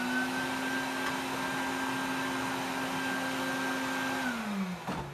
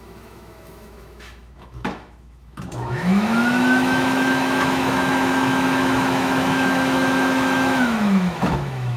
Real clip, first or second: first